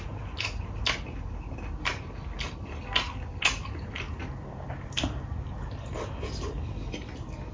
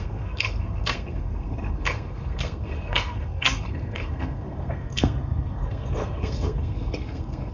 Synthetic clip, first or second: second